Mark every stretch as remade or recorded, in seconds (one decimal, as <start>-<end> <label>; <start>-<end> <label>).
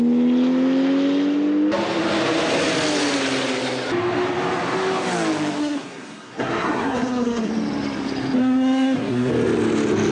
0.0-5.6 recorded; 5.6-7.5 remade; 7.5-8.4 recorded; 8.4-9.3 remade; 9.3-10.1 recorded